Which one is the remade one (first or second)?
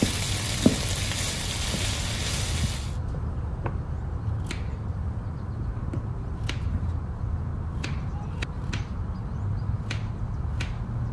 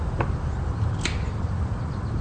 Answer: second